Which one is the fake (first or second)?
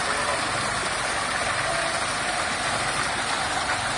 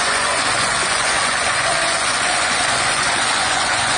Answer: second